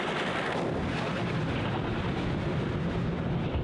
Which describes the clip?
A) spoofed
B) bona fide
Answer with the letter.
B